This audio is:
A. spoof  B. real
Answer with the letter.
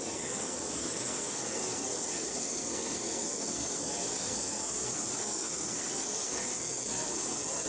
A